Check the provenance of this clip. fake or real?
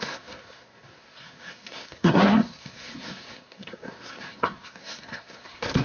fake